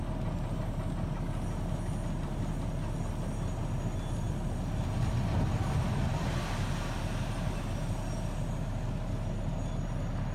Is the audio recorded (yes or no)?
yes